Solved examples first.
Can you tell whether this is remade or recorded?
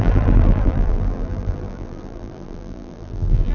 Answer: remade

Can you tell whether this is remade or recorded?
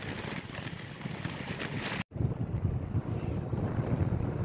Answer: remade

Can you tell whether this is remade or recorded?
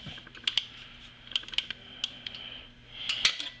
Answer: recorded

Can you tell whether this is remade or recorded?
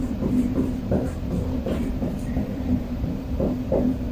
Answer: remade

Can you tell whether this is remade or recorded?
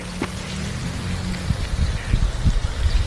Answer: recorded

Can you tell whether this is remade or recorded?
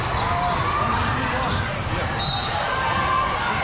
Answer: recorded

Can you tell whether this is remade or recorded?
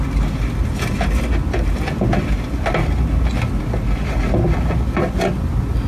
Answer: recorded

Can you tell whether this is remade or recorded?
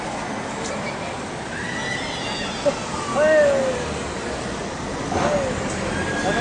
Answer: recorded